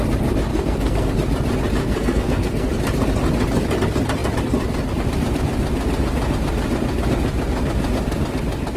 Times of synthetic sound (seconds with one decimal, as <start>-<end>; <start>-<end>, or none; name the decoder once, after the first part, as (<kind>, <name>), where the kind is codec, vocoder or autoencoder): 0.5-1.1 (codec, SNAC); 1.8-2.7